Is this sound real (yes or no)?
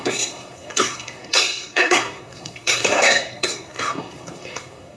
no